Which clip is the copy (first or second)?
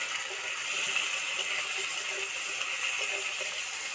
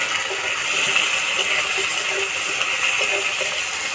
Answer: first